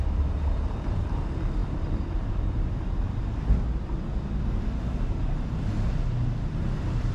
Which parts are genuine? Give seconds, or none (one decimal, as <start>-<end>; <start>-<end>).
0.0-7.1